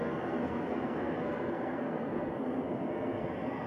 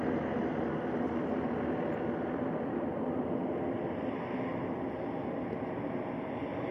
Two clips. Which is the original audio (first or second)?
second